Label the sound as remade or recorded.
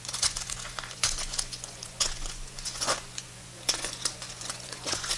remade